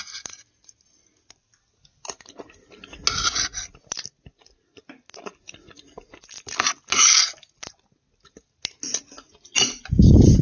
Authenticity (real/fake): real